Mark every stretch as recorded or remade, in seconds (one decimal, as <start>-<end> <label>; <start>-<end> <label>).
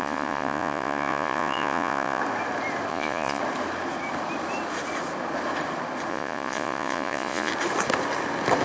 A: 0.0-2.2 remade; 2.2-2.9 recorded; 2.9-3.4 remade; 3.4-6.1 recorded; 6.1-7.5 remade; 7.5-8.6 recorded